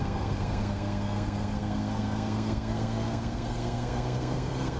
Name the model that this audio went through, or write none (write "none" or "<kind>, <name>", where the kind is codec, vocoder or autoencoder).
codec, SNAC